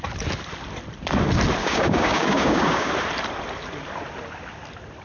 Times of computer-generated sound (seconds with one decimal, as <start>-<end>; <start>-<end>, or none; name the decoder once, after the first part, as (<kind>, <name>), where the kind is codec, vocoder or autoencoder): 1.6-2.9 (codec, DAC)